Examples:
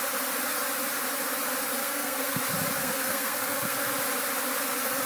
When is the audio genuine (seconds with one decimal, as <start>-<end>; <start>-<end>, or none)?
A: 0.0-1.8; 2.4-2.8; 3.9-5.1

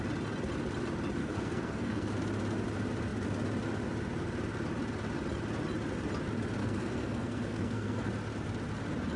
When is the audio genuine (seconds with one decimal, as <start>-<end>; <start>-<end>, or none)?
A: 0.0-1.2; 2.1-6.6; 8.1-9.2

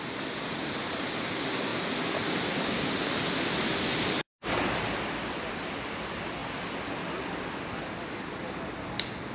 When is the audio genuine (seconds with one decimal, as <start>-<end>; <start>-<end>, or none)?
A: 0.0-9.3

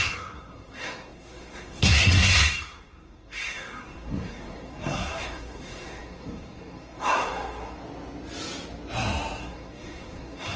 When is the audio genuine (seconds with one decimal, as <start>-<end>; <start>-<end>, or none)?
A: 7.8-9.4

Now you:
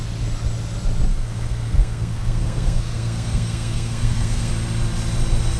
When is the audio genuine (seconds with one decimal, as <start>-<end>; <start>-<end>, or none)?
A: 0.0-1.1; 4.5-5.6

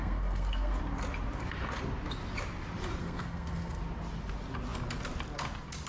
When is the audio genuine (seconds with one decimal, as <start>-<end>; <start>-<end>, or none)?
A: 0.8-3.0; 3.8-5.9

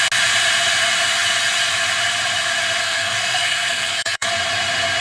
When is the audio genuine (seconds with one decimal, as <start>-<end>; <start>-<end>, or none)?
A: 0.0-2.8; 4.3-5.0